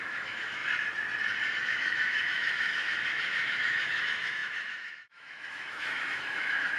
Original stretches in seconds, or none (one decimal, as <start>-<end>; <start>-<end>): 0.6-1.6